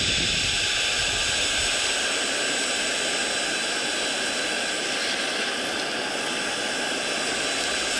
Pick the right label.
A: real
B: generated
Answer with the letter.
A